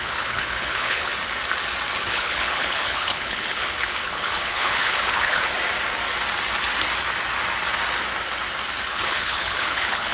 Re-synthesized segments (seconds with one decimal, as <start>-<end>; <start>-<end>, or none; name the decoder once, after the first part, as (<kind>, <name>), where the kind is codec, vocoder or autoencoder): 0.0-1.1 (codec, HILCodec); 2.1-5.5; 8.9-10.1